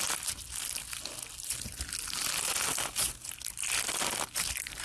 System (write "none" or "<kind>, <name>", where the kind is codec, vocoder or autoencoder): none